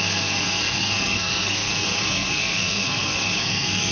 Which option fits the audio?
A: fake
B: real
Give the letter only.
A